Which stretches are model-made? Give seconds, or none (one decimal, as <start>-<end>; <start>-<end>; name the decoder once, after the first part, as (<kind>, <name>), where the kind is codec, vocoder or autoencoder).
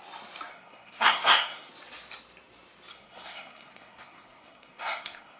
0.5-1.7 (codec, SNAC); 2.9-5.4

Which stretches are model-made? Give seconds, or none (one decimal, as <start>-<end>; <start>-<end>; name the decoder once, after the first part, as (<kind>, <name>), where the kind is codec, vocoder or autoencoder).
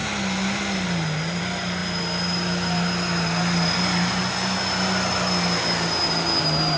none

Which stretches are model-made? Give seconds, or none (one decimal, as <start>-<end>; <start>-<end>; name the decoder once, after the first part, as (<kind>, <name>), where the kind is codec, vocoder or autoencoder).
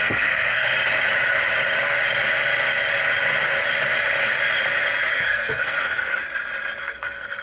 0.0-0.7 (codec, SNAC); 5.1-6.1; 6.8-7.4